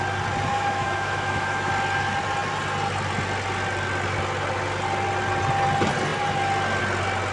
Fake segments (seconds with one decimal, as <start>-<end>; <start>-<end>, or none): 0.5-1.7

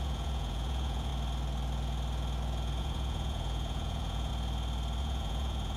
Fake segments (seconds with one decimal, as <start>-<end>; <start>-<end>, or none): 0.0-1.1; 2.8-4.3; 5.0-5.8